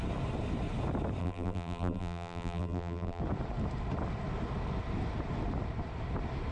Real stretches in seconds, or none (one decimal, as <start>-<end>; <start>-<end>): 0.0-1.2; 3.2-6.5